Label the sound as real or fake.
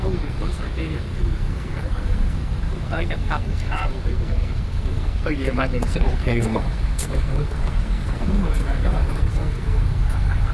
fake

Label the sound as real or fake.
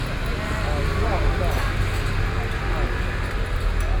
real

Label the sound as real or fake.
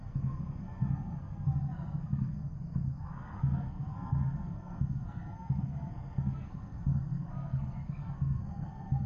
fake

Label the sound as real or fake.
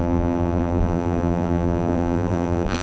fake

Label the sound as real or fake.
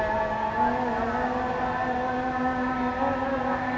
real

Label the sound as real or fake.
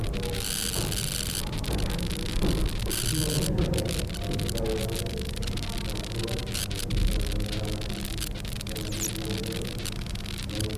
real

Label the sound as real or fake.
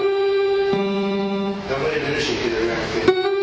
fake